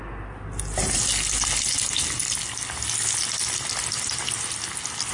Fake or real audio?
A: real